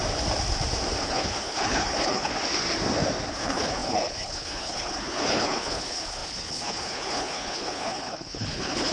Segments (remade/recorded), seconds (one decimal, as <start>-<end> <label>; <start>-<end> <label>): 0.0-1.0 recorded; 1.0-2.3 remade; 2.3-3.3 recorded; 3.3-8.9 remade